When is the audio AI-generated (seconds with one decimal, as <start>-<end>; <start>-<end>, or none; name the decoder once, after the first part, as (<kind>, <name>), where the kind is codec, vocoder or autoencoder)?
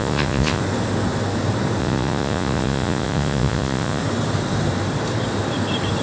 0.0-0.6 (vocoder, Vocos); 1.8-4.0